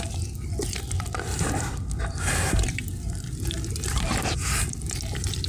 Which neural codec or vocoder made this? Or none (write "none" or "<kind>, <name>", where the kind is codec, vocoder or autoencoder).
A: none